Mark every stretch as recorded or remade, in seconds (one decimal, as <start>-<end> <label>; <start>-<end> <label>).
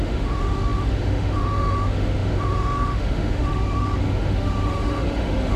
0.0-5.6 remade